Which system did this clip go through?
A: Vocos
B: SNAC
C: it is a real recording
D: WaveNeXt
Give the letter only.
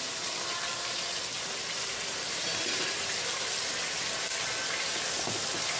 C